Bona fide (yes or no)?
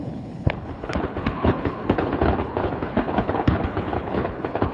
no